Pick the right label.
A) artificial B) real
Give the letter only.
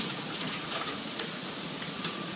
A